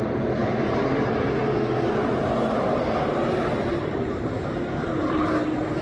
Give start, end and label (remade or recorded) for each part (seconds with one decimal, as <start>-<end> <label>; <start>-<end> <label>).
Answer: 0.0-0.4 recorded; 0.4-1.4 remade; 1.4-2.0 recorded; 2.0-5.8 remade